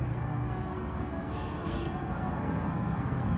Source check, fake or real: fake